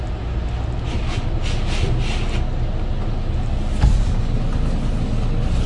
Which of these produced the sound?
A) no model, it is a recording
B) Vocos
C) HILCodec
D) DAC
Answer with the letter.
A